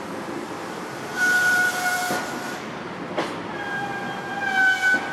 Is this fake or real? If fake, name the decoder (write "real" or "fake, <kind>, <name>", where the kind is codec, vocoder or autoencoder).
real